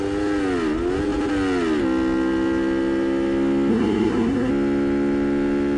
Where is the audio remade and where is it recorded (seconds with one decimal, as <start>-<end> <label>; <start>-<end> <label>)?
0.0-3.7 recorded; 3.7-4.5 remade; 4.5-5.8 recorded